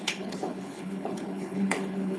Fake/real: fake